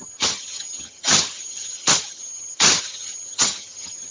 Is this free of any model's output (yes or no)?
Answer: no